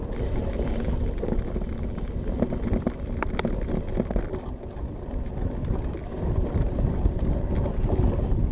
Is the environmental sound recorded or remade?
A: recorded